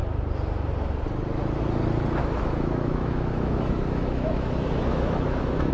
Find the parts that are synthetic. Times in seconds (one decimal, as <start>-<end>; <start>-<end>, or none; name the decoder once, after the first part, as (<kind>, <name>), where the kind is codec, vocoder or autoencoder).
2.2-5.7 (autoencoder, DAC-VAE)